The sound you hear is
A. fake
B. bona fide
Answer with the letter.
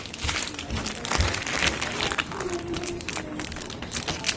B